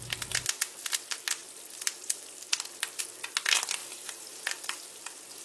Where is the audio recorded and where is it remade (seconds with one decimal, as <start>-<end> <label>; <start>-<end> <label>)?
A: 0.0-1.4 recorded; 1.4-3.0 remade; 3.0-3.8 recorded; 3.8-4.4 remade; 4.4-5.4 recorded